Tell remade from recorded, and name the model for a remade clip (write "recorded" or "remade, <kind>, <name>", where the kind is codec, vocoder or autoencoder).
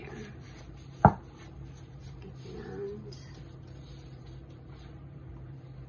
remade, vocoder, BigVGAN v2